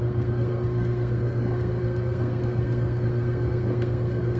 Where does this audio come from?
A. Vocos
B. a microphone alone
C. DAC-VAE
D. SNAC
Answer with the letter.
D